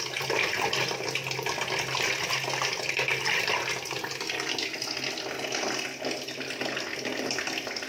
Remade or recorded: recorded